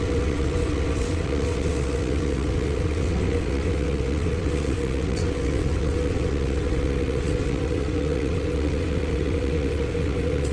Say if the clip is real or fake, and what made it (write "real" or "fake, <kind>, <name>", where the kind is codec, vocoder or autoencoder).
fake, vocoder, WaveNeXt